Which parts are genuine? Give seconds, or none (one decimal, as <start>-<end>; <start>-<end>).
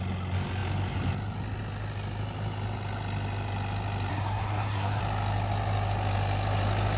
0.0-4.1; 5.0-7.0